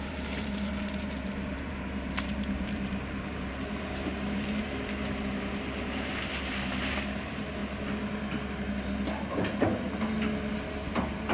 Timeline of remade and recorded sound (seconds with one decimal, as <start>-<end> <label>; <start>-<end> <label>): 0.0-7.6 remade; 7.6-10.5 recorded; 10.5-11.3 remade